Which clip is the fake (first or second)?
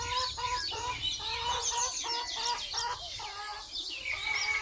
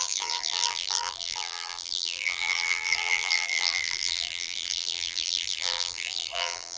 second